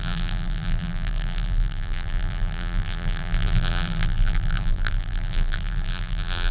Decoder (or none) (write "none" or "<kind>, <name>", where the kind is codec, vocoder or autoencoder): vocoder, BigVGAN v2